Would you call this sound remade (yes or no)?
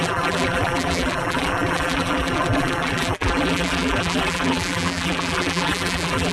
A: yes